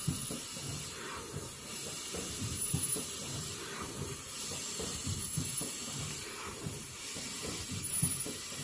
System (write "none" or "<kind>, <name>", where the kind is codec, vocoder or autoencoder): vocoder, BigVGAN v2